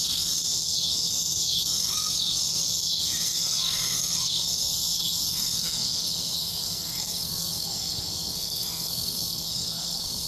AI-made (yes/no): yes